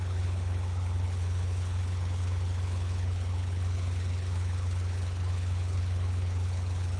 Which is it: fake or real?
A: fake